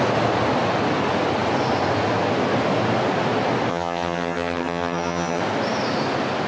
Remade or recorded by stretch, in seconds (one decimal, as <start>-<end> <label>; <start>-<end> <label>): 0.0-3.7 recorded; 3.7-5.4 remade; 5.4-6.5 recorded